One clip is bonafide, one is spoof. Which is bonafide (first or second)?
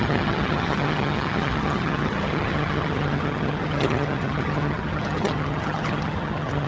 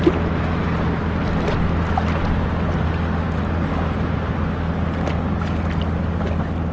second